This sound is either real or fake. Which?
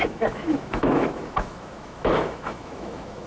fake